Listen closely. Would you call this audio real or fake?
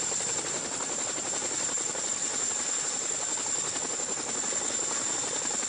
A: real